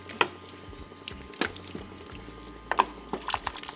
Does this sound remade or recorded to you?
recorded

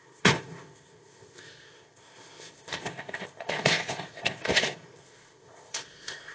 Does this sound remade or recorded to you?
remade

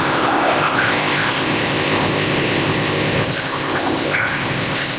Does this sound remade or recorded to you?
remade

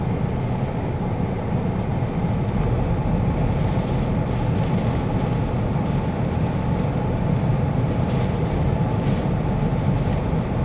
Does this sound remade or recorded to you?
recorded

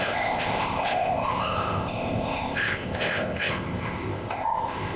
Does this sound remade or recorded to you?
remade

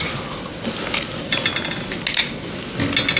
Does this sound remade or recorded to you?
recorded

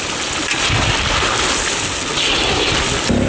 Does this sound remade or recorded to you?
recorded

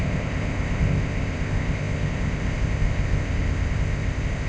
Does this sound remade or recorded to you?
remade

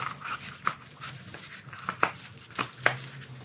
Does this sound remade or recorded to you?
recorded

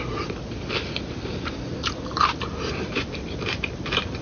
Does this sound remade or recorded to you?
recorded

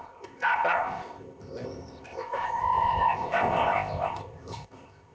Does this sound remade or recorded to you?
remade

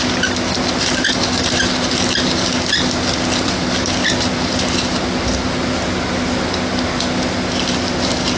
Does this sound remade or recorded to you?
recorded